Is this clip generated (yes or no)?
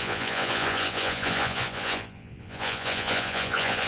yes